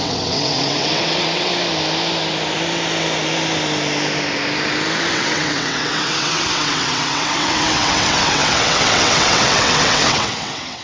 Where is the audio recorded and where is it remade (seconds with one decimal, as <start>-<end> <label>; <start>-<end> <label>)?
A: 0.0-1.5 remade; 1.5-5.1 recorded; 5.1-10.8 remade